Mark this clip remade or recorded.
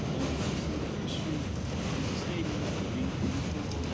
recorded